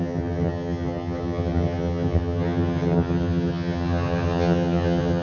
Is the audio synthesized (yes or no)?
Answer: yes